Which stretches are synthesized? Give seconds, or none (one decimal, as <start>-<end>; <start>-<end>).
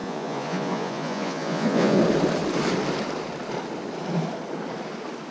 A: 0.0-2.0